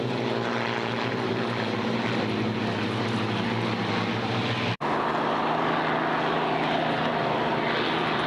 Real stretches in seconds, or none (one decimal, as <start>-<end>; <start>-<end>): 0.0-8.3